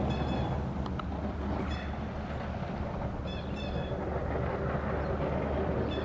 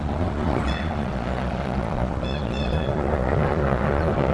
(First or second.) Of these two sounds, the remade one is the second